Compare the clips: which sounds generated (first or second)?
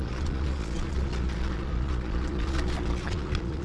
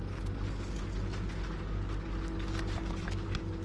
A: first